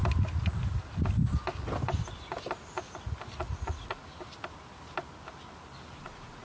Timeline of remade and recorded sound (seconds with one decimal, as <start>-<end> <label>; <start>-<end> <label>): 0.0-3.5 recorded; 3.5-4.0 remade; 4.0-6.0 recorded; 6.0-6.4 remade